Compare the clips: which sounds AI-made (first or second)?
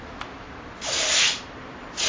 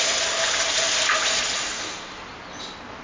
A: first